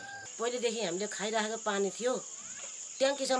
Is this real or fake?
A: real